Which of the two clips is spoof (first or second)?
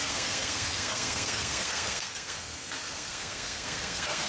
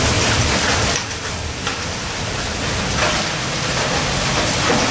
first